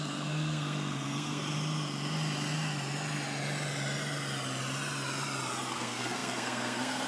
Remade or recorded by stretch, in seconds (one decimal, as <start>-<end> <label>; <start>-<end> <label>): 0.0-1.4 remade; 1.4-5.7 recorded; 5.7-7.1 remade